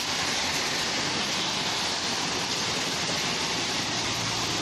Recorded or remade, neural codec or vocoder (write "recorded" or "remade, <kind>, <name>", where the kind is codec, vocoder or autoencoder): remade, vocoder, BigVGAN v2